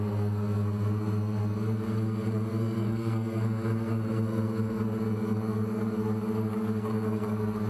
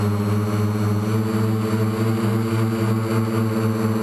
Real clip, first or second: second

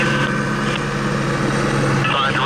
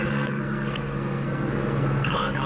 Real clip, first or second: first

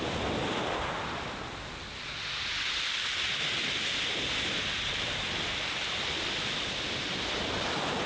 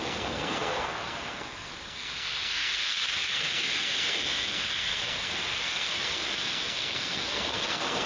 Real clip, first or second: first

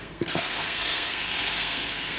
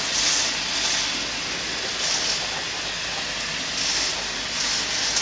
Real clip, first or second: second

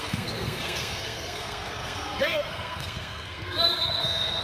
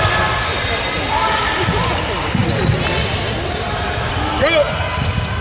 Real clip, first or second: second